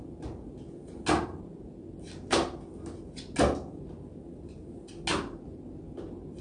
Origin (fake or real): real